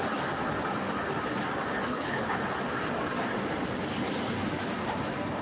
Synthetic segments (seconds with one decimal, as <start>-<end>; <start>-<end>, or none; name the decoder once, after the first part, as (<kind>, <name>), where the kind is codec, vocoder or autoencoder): 1.9-2.4 (codec, HILCodec)